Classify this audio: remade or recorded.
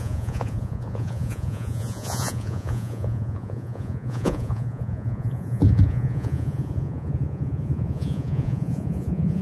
remade